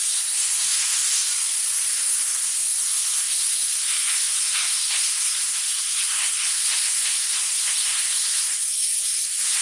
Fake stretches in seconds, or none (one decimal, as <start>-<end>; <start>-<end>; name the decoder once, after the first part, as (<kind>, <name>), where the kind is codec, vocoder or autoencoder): 0.0-1.3 (codec, SNAC); 1.9-9.6